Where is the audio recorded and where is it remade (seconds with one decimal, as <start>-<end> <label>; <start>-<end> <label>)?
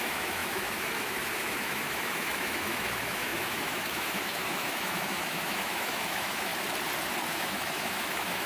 0.0-6.5 remade; 6.5-7.3 recorded; 7.3-8.5 remade